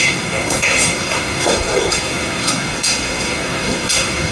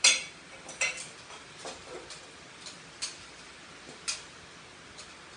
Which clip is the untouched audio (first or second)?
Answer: second